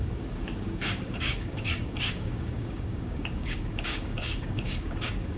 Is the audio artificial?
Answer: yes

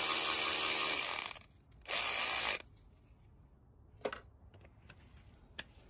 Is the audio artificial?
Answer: no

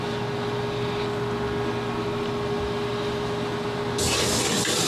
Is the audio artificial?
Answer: no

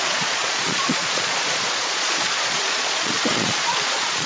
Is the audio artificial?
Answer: yes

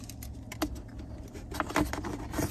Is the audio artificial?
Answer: no